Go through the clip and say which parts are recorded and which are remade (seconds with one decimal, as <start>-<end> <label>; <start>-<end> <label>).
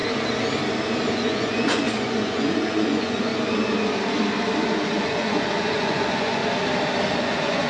0.0-1.1 recorded; 1.1-3.3 remade; 3.3-5.0 recorded; 5.0-6.4 remade; 6.4-7.2 recorded; 7.2-7.7 remade